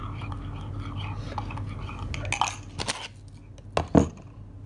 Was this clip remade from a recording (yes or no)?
no